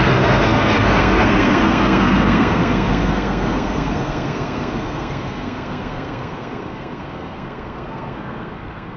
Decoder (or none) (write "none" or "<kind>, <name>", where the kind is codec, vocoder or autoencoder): codec, SNAC